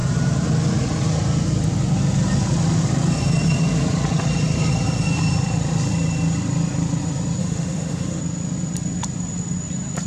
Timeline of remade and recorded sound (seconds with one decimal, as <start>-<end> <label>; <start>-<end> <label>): 0.0-7.4 recorded; 7.4-8.2 remade; 8.2-10.1 recorded